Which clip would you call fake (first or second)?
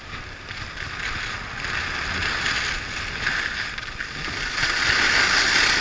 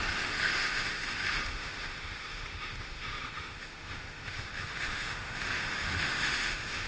second